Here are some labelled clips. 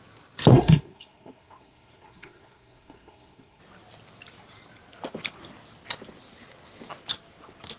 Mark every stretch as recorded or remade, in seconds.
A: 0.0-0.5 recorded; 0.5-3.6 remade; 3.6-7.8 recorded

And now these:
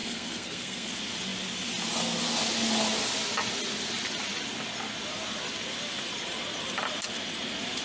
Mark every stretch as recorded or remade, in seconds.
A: 0.0-0.9 remade; 0.9-7.8 recorded

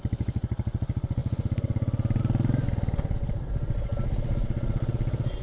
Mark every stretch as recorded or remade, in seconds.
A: 0.0-5.4 recorded

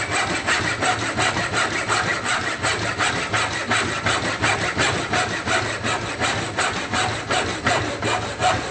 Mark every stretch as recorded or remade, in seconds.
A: 0.0-8.7 recorded

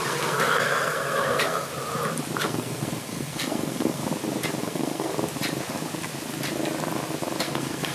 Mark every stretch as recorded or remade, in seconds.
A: 0.0-1.7 remade; 1.7-2.4 recorded; 2.4-4.0 remade; 4.0-4.6 recorded; 4.6-5.1 remade; 5.1-7.4 recorded; 7.4-7.9 remade